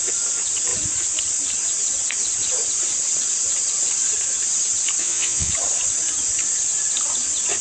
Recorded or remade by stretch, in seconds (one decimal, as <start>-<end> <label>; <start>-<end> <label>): 0.0-5.0 recorded; 5.0-5.5 remade; 5.5-7.6 recorded